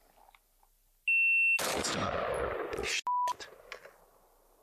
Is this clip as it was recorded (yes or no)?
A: yes